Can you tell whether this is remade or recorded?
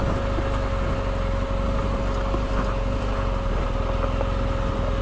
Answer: recorded